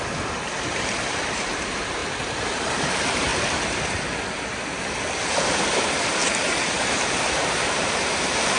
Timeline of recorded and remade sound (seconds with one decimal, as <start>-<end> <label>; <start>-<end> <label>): 0.0-2.0 remade; 2.0-2.5 recorded; 2.5-3.3 remade; 3.3-5.4 recorded; 5.4-6.2 remade; 6.2-6.9 recorded; 6.9-8.6 remade